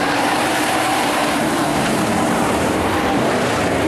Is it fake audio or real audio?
fake